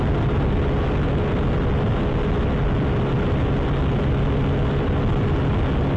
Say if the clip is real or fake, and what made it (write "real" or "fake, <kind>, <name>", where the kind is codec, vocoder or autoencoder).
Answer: real